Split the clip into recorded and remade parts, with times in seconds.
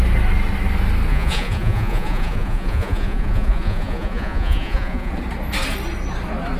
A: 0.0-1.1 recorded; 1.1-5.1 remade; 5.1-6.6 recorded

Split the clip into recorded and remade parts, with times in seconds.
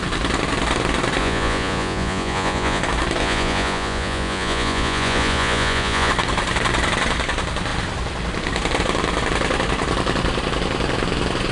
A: 0.0-1.2 recorded; 1.2-2.8 remade; 2.8-3.2 recorded; 3.2-6.1 remade; 6.1-11.5 recorded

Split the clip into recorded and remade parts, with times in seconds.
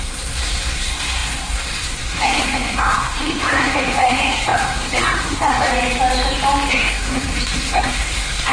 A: 0.0-5.7 remade; 5.7-6.7 recorded; 6.7-8.5 remade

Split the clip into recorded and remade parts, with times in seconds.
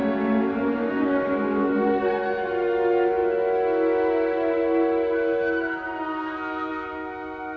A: 0.0-7.6 recorded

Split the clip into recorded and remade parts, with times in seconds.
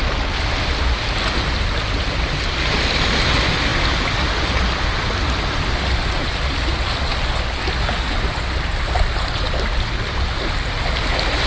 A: 0.0-11.5 recorded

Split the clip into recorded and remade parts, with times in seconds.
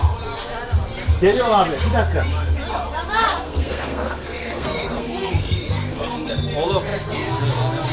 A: 0.0-3.3 recorded; 3.3-6.3 remade; 6.3-7.9 recorded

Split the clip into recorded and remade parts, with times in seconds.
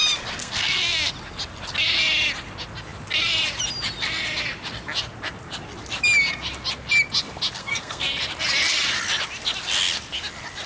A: 0.0-0.4 recorded; 0.4-1.1 remade; 1.1-7.6 recorded; 7.6-8.1 remade; 8.1-10.7 recorded